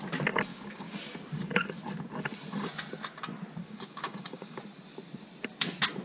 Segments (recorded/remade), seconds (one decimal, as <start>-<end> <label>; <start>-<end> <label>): 0.0-0.5 recorded; 0.5-1.0 remade; 1.0-3.6 recorded; 3.6-4.6 remade; 4.6-6.0 recorded